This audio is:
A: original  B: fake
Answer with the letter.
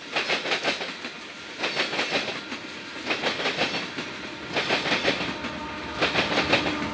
A